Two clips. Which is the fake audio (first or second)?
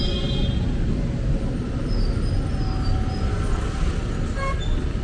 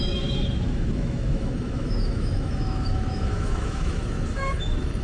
second